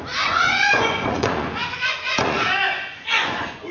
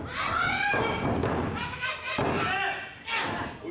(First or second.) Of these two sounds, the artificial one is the first